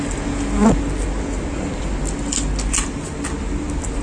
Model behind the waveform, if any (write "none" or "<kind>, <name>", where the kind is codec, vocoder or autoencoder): none